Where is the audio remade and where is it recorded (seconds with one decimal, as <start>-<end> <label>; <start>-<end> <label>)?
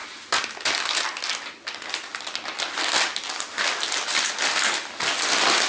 0.0-5.7 recorded